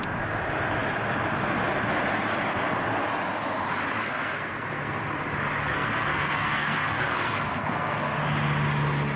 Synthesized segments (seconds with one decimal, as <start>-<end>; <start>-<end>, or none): 4.0-5.0; 5.6-8.2